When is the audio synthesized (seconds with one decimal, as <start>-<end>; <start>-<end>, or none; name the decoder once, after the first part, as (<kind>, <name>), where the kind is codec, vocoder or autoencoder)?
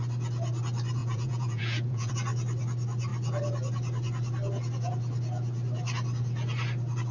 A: 1.0-2.1 (vocoder, Vocos)